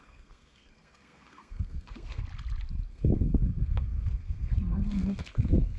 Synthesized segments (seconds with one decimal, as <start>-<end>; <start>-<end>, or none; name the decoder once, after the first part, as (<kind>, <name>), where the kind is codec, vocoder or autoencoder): 0.0-2.2 (codec, SNAC); 2.9-5.8